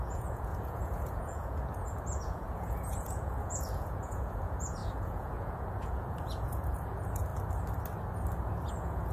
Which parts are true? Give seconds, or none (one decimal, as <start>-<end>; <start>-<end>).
7.3-8.7